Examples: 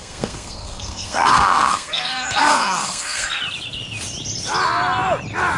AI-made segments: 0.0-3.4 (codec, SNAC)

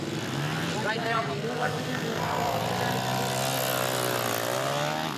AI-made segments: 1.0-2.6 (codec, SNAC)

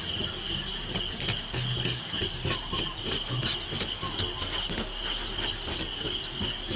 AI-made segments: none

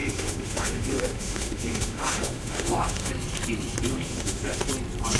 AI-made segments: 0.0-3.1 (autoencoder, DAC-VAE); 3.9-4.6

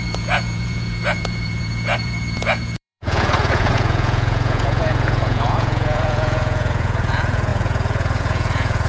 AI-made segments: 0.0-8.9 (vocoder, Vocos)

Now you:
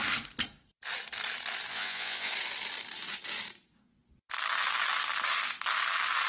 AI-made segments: 1.7-2.3 (vocoder, Vocos)